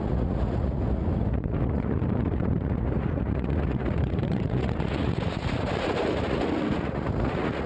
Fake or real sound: fake